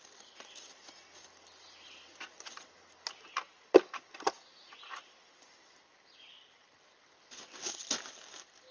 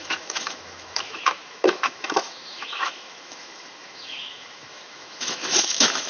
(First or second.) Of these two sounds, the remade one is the second